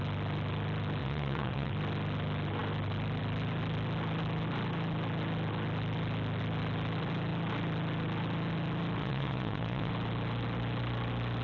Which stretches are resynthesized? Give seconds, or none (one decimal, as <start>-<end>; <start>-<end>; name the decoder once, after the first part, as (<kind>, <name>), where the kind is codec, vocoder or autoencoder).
1.0-1.7 (vocoder, WaveNeXt); 9.0-9.9